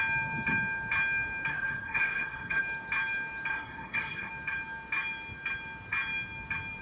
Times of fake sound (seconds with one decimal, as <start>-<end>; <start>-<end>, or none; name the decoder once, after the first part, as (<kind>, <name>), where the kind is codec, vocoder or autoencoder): 1.5-2.6 (codec, SNAC); 3.5-4.3